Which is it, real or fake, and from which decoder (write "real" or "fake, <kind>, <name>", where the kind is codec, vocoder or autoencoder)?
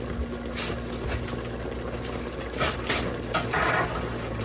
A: real